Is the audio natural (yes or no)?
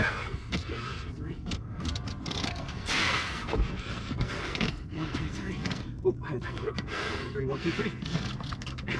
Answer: no